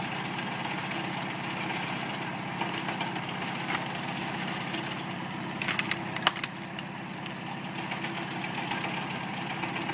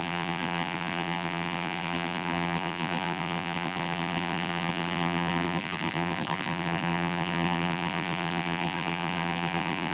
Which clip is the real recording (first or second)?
first